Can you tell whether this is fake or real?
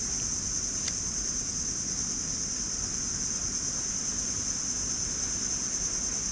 fake